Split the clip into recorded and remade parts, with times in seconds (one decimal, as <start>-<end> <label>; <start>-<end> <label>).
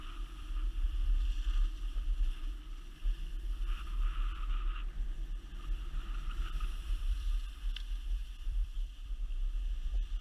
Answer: 0.0-8.2 recorded; 8.2-9.2 remade; 9.2-10.2 recorded